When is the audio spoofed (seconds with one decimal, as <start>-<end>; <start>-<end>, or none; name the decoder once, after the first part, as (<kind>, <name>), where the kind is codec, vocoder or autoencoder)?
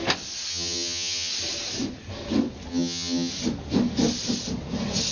0.5-1.3 (vocoder, HiFi-GAN); 2.7-3.3